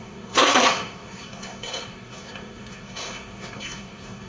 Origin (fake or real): fake